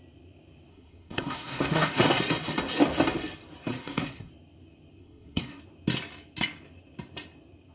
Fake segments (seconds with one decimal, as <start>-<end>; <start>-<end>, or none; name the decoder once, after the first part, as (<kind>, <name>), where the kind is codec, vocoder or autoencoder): 0.7-2.2 (codec, SNAC); 3.7-4.3; 5.0-5.6